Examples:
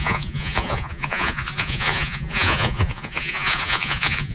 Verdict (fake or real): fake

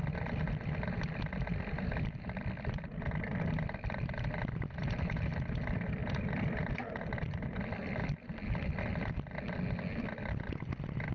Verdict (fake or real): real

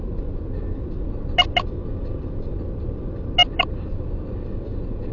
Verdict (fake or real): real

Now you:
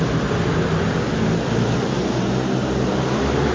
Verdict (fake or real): real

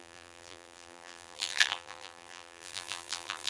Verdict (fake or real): fake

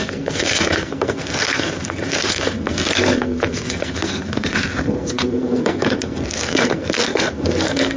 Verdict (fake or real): fake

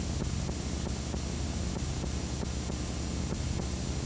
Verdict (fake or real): real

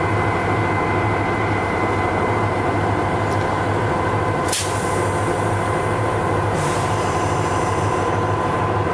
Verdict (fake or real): fake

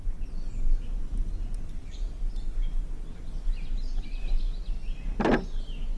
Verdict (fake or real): real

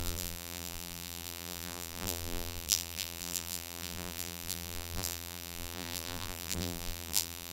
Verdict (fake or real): fake